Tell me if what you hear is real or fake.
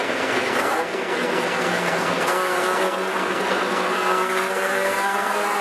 fake